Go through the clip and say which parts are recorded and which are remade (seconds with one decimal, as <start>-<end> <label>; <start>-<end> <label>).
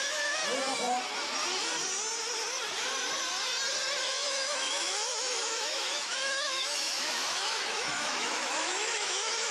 0.0-0.4 remade; 0.4-4.0 recorded; 4.0-9.5 remade